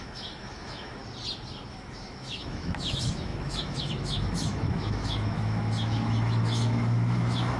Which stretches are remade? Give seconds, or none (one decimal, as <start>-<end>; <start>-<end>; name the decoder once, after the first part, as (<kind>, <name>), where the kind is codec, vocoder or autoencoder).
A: 0.0-1.0 (autoencoder, DAC-VAE); 1.7-7.6